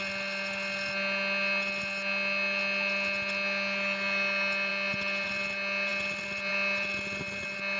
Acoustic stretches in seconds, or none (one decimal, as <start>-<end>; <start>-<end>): 0.0-7.8